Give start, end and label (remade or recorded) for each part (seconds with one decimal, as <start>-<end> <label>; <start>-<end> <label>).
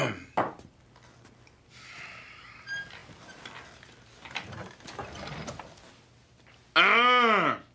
0.0-7.7 recorded